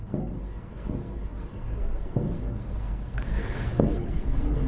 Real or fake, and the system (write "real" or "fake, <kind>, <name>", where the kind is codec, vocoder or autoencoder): fake, codec, SNAC